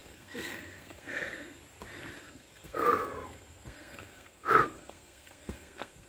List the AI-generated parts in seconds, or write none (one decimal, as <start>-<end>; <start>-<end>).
0.0-1.6; 2.2-6.1